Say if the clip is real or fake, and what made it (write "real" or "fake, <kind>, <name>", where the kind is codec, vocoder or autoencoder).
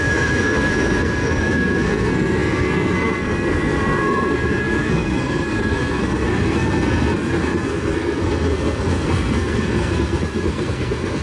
fake, codec, SNAC